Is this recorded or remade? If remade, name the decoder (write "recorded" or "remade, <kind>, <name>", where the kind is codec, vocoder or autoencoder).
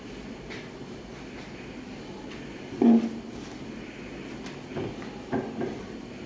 recorded